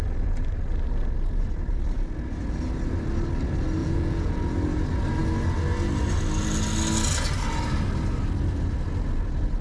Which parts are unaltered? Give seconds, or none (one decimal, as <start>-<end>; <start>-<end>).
0.0-3.8; 4.3-9.6